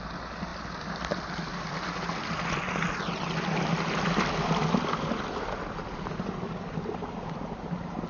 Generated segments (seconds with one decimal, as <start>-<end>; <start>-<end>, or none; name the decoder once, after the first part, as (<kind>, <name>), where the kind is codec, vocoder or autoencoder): none